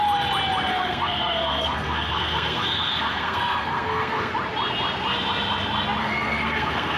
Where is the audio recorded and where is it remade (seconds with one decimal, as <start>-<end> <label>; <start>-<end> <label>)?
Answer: 0.0-0.7 recorded; 0.7-4.3 remade; 4.3-6.0 recorded; 6.0-7.0 remade